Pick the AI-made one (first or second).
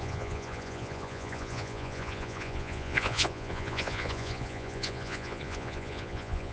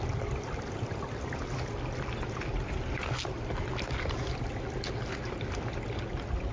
first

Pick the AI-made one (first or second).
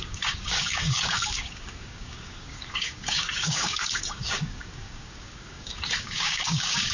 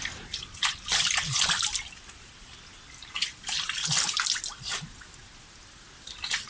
first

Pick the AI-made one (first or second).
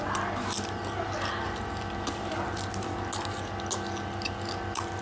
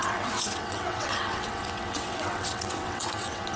second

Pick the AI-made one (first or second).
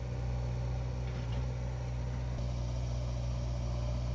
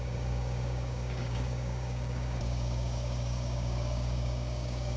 second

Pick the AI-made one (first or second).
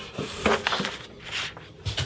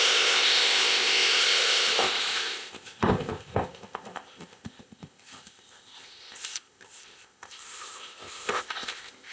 second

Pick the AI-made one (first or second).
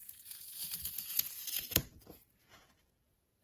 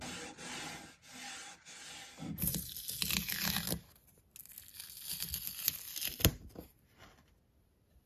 first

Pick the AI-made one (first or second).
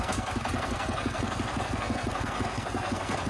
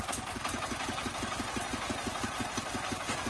first